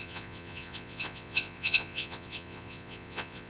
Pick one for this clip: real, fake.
fake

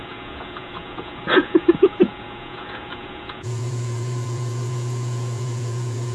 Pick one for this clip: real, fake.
fake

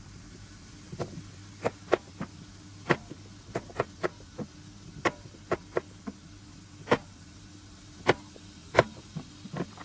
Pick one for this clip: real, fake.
real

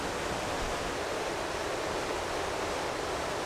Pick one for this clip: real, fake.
real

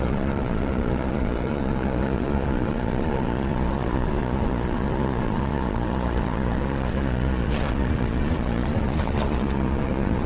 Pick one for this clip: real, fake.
fake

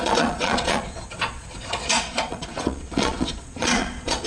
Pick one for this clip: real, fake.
fake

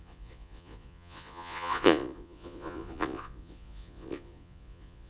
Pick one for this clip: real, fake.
fake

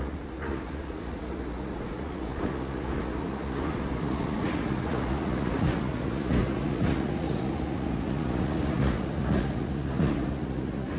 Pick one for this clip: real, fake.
fake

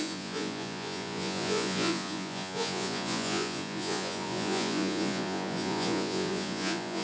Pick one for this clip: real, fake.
fake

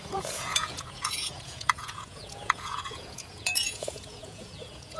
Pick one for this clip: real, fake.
fake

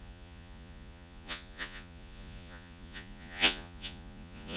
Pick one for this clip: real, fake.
fake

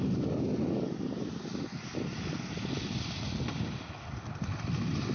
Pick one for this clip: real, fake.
real